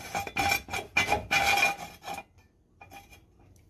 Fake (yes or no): no